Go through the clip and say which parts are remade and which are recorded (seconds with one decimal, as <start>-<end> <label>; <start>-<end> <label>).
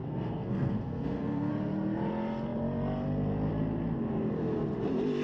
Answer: 0.0-1.5 remade; 1.5-5.2 recorded